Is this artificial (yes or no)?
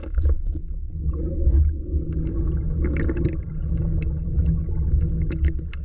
no